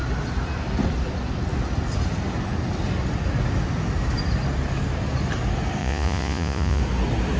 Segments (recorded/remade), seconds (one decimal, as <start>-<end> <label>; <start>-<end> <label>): 0.0-5.8 recorded; 5.8-6.8 remade; 6.8-7.4 recorded